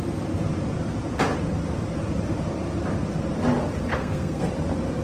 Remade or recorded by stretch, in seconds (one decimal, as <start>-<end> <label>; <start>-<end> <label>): 0.0-3.9 recorded; 3.9-4.5 remade; 4.5-5.0 recorded